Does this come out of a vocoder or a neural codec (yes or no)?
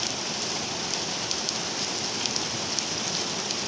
no